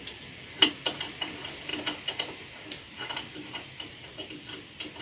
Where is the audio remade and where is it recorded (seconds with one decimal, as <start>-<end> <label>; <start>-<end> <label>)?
0.0-1.7 remade; 1.7-5.0 recorded